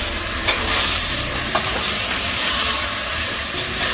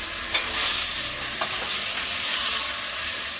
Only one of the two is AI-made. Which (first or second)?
first